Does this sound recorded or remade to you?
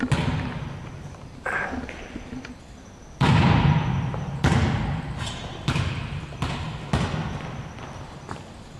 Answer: recorded